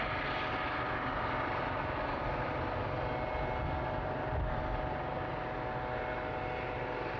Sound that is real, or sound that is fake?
real